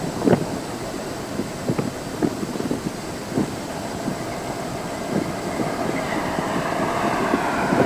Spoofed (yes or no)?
no